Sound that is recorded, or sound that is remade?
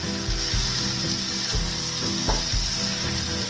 recorded